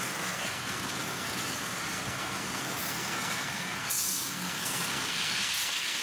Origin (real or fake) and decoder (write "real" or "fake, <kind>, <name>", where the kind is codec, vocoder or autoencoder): fake, codec, SNAC